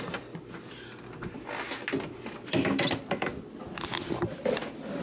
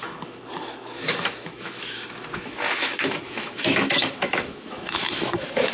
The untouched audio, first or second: first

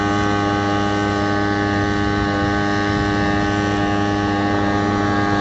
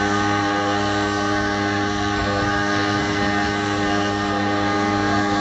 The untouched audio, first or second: first